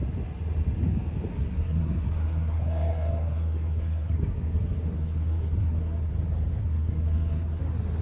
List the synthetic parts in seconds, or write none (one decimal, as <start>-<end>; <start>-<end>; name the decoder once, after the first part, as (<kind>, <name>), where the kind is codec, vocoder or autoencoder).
1.3-6.1 (codec, SNAC); 6.6-7.6